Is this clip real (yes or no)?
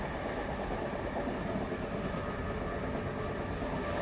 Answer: yes